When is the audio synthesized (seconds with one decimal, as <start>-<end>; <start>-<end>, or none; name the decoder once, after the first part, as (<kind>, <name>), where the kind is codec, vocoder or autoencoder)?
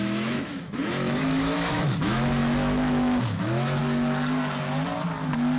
0.0-3.8 (autoencoder, DAC-VAE)